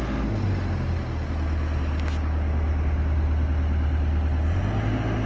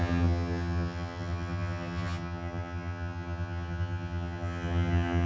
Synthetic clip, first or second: second